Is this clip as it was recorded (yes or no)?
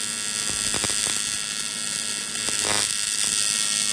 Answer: yes